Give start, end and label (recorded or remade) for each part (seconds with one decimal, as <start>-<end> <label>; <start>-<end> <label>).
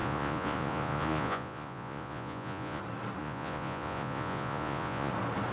0.0-2.8 remade; 2.8-3.2 recorded; 3.2-5.1 remade; 5.1-5.5 recorded